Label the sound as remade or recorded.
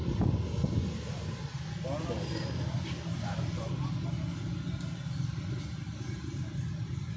recorded